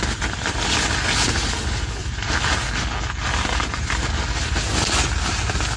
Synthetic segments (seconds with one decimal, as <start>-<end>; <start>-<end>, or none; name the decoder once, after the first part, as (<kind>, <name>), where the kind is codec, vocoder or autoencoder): none